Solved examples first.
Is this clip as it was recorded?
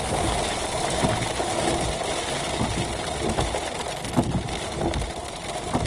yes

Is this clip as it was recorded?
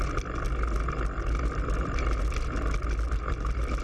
yes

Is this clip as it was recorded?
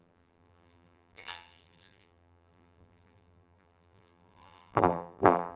no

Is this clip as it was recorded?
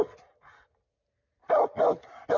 yes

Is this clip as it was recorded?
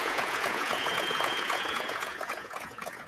no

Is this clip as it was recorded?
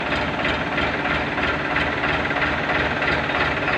yes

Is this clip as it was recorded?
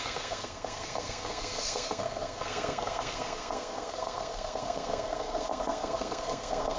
no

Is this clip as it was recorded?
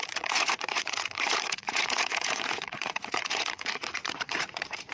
no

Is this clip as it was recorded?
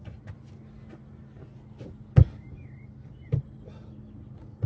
yes